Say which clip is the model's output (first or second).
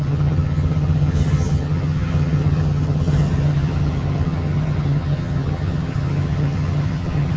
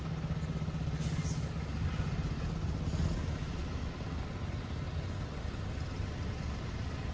first